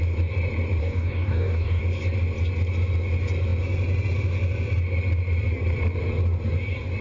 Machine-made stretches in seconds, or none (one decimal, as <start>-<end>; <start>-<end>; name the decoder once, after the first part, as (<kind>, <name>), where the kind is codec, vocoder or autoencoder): 0.8-1.8 (codec, DAC)